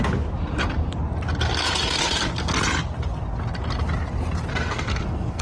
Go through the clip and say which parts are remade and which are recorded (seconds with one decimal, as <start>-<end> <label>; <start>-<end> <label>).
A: 0.0-4.5 recorded; 4.5-5.4 remade